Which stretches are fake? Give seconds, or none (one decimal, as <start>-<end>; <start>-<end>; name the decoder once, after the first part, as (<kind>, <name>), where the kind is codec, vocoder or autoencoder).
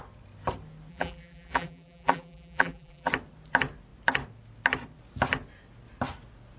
0.9-3.1 (vocoder, BigVGAN v2)